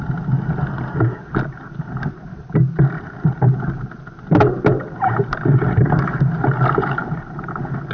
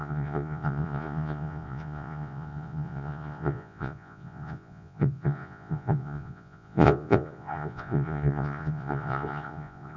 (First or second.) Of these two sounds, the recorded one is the first